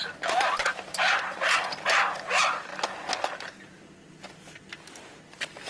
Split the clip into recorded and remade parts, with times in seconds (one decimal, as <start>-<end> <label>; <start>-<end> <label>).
0.0-5.7 recorded